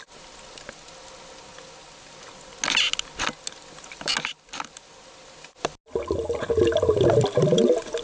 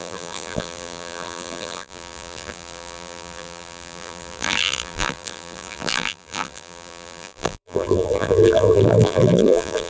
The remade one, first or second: second